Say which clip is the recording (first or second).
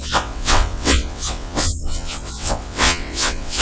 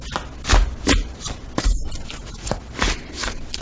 second